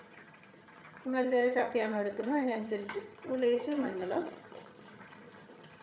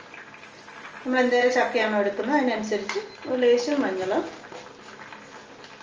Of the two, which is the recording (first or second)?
second